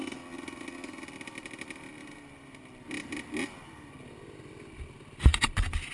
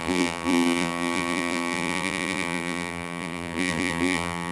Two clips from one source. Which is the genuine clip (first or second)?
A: first